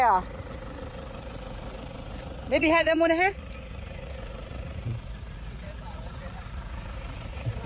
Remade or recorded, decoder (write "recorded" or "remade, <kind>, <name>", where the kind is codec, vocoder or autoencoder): remade, vocoder, Vocos